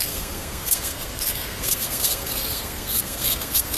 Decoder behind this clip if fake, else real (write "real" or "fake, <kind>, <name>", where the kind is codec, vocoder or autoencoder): fake, codec, SNAC